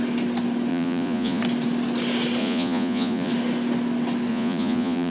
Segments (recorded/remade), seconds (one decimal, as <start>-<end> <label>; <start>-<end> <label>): 0.0-0.7 recorded; 0.7-1.4 remade; 1.4-2.4 recorded; 2.4-3.3 remade; 3.3-4.3 recorded; 4.3-5.1 remade